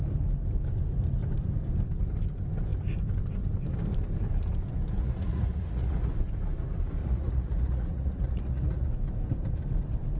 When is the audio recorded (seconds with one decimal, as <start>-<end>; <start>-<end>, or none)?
0.0-5.0; 6.1-7.0; 8.9-10.2